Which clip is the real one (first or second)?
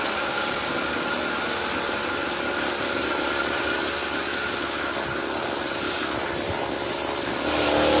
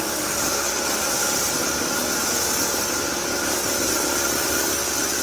first